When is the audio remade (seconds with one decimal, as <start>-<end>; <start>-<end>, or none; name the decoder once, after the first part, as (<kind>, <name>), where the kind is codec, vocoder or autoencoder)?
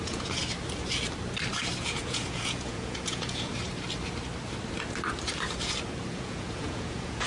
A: 0.0-0.4 (vocoder, Vocos); 1.8-3.5; 6.1-7.3